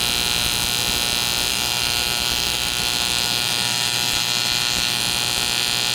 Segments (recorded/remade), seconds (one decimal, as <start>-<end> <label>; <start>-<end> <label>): 0.0-1.5 recorded; 1.5-5.0 remade; 5.0-5.9 recorded

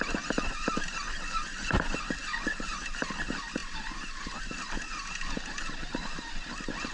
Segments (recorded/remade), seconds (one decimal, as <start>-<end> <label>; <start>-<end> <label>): 0.0-6.9 recorded

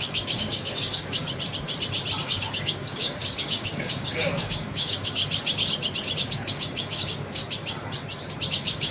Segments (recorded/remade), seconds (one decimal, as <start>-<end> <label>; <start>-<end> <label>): 0.0-1.2 remade; 1.2-2.2 recorded; 2.2-5.2 remade; 5.2-6.2 recorded; 6.2-7.4 remade; 7.4-8.5 recorded; 8.5-8.9 remade

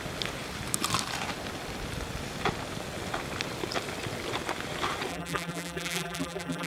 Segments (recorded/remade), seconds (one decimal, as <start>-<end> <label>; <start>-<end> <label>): 0.0-5.1 recorded; 5.1-6.7 remade

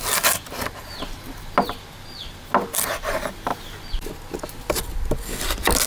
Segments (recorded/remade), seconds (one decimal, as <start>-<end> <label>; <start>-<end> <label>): 0.0-5.9 recorded

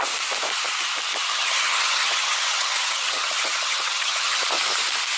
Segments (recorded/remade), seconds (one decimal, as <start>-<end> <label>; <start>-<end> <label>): 0.0-1.3 recorded; 1.3-4.4 remade; 4.4-5.2 recorded

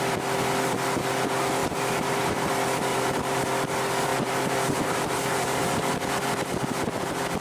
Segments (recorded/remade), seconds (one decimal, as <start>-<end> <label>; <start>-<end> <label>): 0.0-1.6 recorded; 1.6-2.5 remade; 2.5-2.9 recorded; 2.9-3.5 remade; 3.5-4.1 recorded; 4.1-5.9 remade; 5.9-7.4 recorded